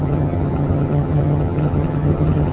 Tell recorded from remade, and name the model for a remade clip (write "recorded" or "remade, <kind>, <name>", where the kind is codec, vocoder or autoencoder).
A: remade, vocoder, HiFi-GAN